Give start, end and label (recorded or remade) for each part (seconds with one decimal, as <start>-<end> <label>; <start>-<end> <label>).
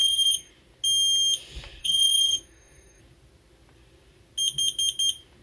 0.0-0.5 remade; 0.5-1.8 recorded; 1.8-3.0 remade; 3.0-5.4 recorded